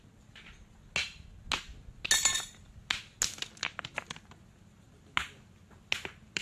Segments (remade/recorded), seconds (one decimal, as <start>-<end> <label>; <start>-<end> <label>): 0.0-6.4 recorded